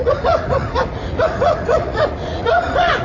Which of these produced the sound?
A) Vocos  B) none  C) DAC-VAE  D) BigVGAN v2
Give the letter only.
A